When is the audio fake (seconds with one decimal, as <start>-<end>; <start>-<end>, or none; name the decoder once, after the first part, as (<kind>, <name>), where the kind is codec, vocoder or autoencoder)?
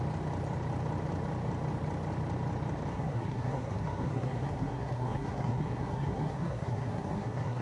2.9-7.6 (codec, SNAC)